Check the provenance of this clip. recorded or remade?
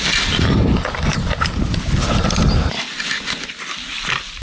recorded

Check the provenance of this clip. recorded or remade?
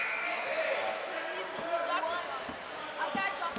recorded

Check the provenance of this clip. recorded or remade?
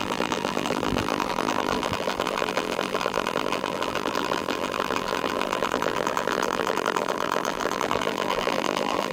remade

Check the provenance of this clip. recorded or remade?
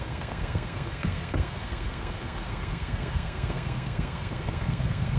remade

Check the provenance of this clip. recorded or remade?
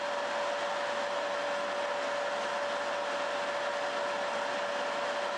recorded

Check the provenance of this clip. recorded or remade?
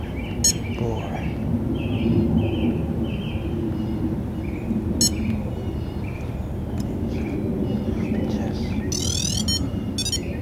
recorded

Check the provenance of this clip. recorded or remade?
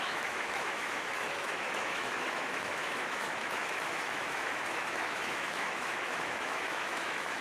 remade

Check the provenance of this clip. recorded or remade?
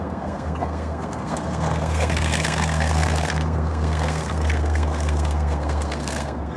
remade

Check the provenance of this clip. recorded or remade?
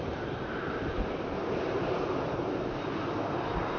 recorded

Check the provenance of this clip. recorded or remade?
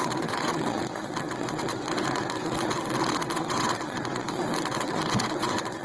remade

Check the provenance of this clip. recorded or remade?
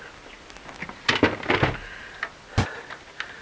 recorded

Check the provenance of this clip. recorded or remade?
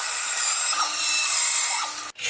recorded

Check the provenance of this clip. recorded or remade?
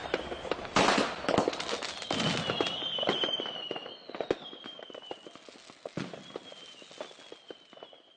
recorded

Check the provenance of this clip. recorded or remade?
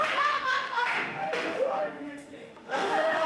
remade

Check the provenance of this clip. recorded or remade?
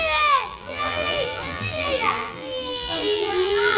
remade